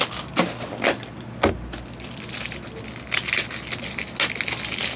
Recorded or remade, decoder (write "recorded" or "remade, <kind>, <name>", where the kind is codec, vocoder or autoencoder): recorded